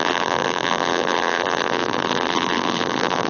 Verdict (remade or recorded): remade